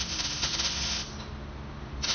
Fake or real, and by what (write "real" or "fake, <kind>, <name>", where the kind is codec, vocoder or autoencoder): real